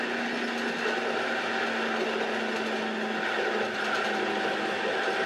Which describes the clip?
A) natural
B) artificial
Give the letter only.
A